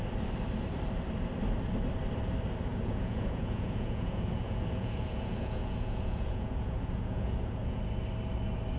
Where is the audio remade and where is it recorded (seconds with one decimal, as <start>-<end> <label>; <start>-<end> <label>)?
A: 0.0-2.7 recorded; 2.7-7.8 remade; 7.8-8.8 recorded